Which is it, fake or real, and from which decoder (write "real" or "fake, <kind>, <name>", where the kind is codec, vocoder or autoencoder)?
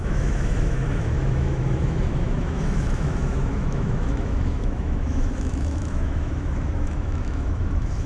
fake, autoencoder, DAC-VAE